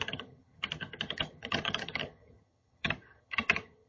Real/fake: fake